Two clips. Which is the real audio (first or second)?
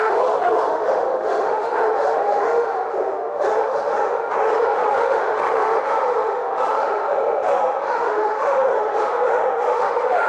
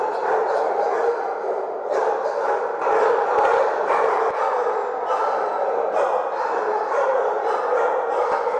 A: second